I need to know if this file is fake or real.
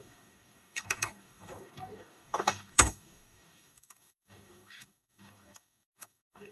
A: fake